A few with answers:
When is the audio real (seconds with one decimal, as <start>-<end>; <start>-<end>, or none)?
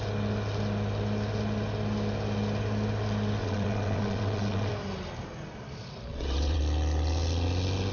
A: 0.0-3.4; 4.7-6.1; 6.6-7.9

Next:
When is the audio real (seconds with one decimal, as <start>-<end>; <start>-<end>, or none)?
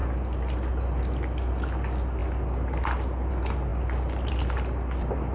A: 0.0-5.3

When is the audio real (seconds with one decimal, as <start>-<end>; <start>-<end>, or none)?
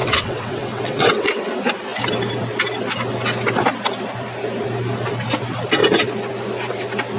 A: 1.4-7.2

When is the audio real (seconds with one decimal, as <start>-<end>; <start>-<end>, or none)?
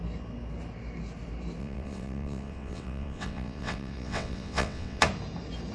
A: 0.0-1.6; 5.0-5.7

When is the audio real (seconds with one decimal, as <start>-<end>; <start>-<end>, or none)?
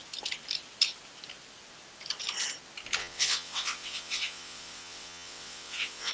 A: 0.0-3.0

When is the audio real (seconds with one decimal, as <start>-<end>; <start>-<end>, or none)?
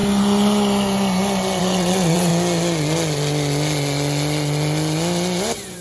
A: 0.0-1.6; 2.3-5.8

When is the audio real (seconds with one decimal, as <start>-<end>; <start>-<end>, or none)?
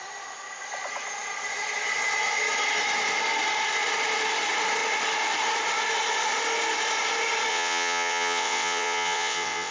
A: 0.0-7.5